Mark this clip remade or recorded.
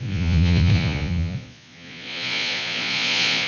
remade